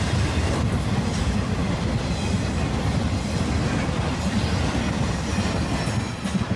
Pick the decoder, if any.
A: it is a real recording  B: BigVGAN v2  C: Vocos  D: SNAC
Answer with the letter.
A